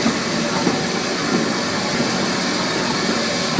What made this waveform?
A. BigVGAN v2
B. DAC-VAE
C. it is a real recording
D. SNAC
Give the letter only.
C